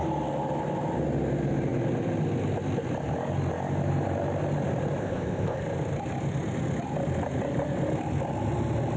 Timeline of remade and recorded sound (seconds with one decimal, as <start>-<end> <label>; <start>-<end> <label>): 0.0-5.0 recorded; 5.0-5.6 remade; 5.6-9.0 recorded